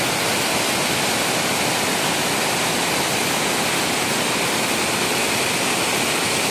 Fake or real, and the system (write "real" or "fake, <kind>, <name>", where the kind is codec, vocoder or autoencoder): real